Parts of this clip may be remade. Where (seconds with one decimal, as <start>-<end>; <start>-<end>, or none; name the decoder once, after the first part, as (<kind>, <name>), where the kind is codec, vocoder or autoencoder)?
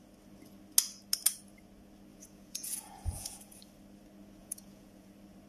2.1-3.6 (vocoder, Vocos); 4.4-5.1